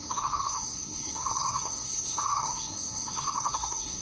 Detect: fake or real fake